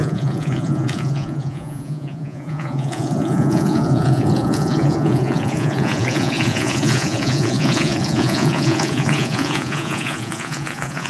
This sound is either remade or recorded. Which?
remade